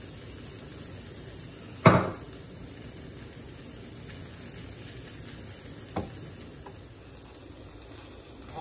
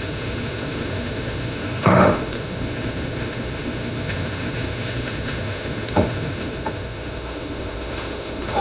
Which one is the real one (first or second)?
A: first